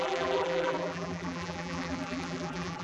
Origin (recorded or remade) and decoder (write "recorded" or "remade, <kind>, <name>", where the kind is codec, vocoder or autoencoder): remade, vocoder, BigVGAN v2